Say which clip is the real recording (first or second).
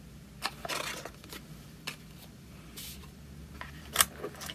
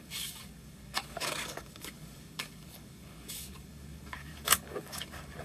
first